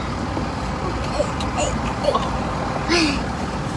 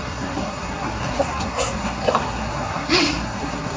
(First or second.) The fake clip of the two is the second